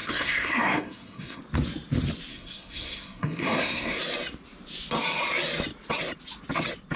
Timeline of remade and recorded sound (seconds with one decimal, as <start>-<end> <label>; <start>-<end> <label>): 0.0-1.4 remade; 1.4-2.3 recorded; 2.3-4.0 remade; 4.0-7.0 recorded